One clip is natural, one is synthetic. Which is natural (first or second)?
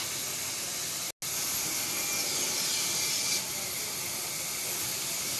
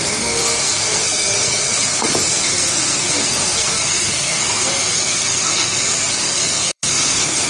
first